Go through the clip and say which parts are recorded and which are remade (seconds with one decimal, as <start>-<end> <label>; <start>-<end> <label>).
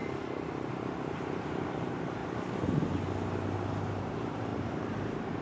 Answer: 0.0-1.1 recorded; 1.1-2.2 remade; 2.2-4.0 recorded; 4.0-5.4 remade